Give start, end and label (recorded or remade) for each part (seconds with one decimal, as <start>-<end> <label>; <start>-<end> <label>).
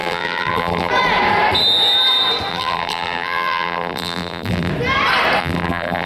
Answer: 0.0-0.9 remade; 0.9-2.5 recorded; 2.5-4.7 remade; 4.7-5.4 recorded; 5.4-6.1 remade